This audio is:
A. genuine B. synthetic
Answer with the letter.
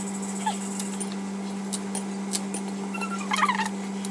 A